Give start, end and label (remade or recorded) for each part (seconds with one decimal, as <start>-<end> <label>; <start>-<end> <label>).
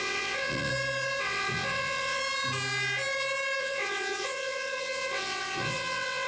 0.0-0.7 remade; 0.7-1.2 recorded; 1.2-2.2 remade; 2.2-3.6 recorded; 3.6-6.3 remade